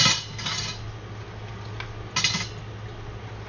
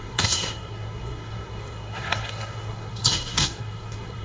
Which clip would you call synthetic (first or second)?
second